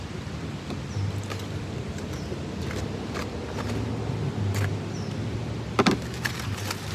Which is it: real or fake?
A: real